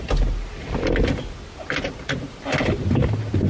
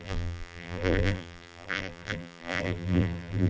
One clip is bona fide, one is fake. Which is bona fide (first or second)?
first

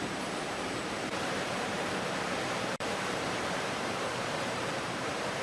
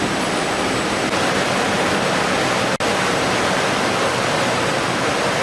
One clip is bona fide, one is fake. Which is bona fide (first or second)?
second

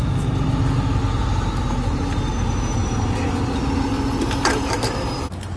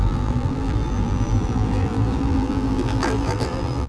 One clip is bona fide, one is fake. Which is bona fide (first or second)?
first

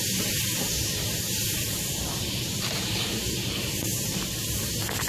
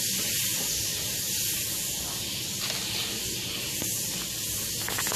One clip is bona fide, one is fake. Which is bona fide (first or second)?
second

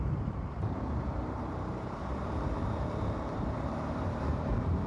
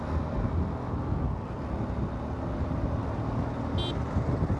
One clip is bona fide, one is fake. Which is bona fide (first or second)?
second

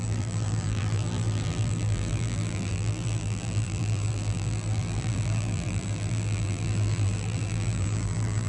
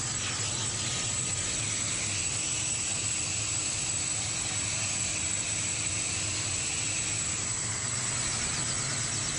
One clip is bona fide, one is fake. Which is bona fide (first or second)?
second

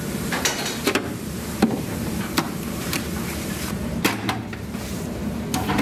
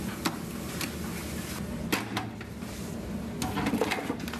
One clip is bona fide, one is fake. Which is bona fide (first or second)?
second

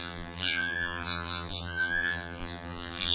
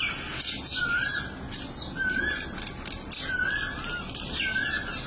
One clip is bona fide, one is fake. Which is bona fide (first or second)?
second